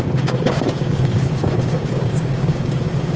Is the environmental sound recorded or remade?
remade